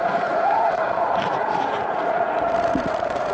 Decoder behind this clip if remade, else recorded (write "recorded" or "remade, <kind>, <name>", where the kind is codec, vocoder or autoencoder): remade, vocoder, Vocos